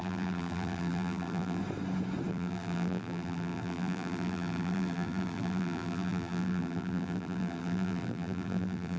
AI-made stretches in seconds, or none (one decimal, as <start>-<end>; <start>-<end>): 0.0-1.6; 2.3-9.0

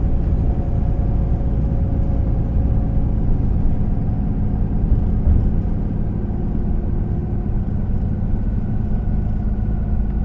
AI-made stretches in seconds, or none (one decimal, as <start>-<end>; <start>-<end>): none

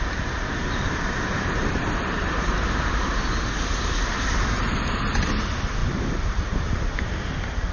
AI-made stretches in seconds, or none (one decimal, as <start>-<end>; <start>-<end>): 0.6-5.2; 5.8-7.2